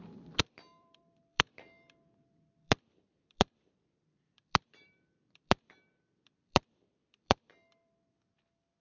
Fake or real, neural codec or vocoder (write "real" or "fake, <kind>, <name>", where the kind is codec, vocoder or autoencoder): fake, vocoder, BigVGAN v2